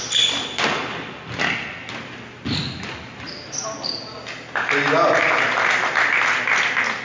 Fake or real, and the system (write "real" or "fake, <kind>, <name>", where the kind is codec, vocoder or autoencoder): real